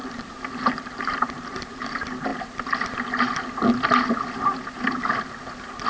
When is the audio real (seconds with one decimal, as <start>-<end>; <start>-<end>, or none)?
2.3-5.9